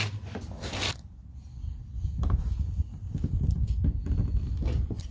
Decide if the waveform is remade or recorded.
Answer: recorded